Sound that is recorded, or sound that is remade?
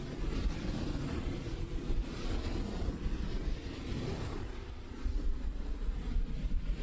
recorded